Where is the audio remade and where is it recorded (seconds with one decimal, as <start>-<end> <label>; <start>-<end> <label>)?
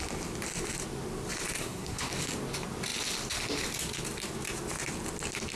0.0-1.6 recorded; 1.6-2.1 remade; 2.1-5.6 recorded